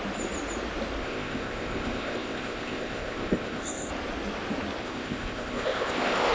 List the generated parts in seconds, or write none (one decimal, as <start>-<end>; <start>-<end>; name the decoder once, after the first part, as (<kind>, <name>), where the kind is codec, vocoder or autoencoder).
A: 1.0-3.9 (codec, ZipCodec); 4.8-6.3